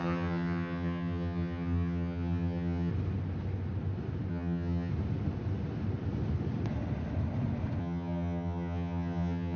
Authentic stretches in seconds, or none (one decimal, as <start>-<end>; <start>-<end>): 2.9-4.3; 4.9-7.8